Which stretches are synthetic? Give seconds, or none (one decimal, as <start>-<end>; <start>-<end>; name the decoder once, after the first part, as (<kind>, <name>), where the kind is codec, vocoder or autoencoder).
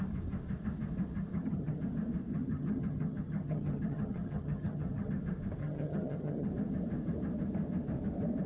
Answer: 1.3-1.8 (vocoder, HiFi-GAN); 2.3-5.1; 5.6-6.5